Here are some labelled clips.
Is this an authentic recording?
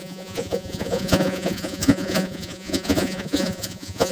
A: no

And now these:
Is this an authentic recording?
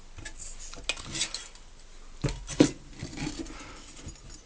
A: yes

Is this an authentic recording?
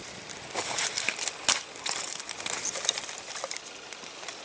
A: yes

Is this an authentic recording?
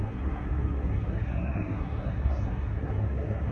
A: no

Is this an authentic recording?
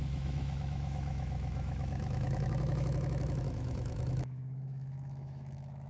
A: no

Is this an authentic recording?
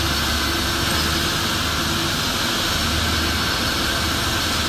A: yes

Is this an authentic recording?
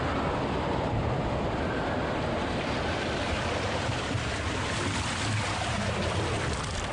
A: yes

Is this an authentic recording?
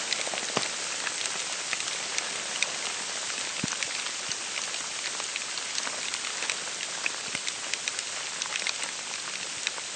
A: yes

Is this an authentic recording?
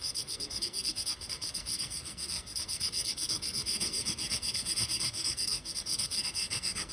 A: no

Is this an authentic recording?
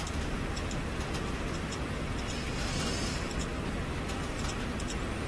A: yes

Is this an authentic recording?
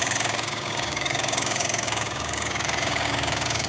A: no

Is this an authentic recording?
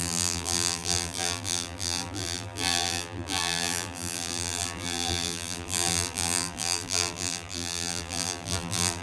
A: no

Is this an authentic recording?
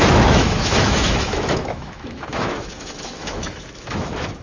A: no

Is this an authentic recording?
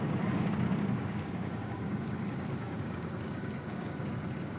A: no